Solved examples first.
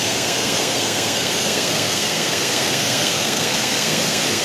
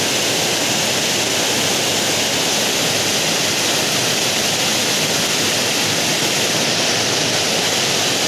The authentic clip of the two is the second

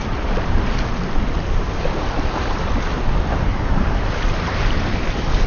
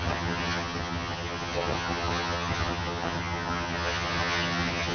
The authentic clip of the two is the first